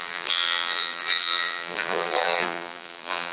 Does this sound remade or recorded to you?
remade